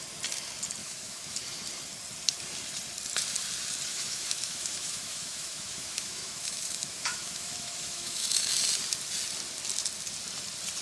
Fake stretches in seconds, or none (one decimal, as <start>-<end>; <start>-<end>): 0.8-1.4; 3.9-8.4